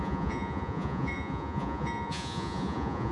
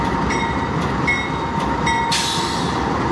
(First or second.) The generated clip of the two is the first